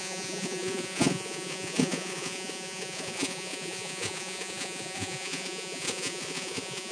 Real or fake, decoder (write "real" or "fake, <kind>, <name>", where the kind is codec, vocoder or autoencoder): fake, vocoder, Vocos